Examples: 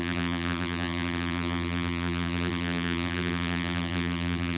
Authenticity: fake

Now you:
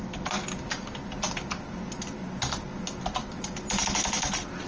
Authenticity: real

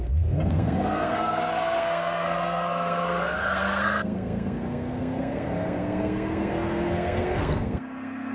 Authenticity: fake